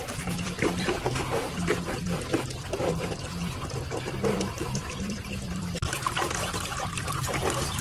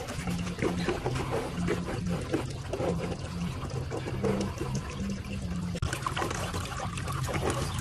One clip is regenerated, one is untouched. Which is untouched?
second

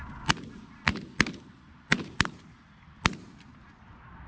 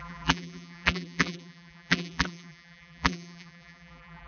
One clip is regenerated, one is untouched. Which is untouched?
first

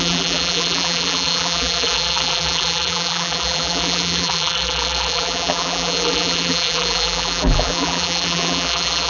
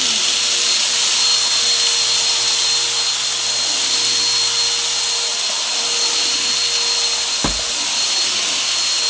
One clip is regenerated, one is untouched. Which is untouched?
second